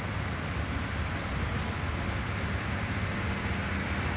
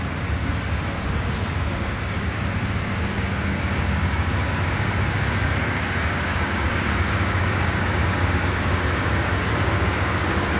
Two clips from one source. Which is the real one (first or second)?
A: first